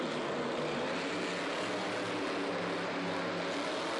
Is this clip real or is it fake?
real